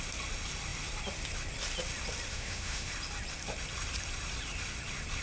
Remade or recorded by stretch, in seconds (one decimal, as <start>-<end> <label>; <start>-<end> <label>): 0.0-2.3 recorded; 2.3-2.9 remade; 2.9-5.2 recorded